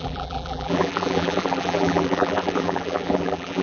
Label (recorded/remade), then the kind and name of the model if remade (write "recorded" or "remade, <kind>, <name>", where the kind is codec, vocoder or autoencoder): remade, vocoder, BigVGAN v2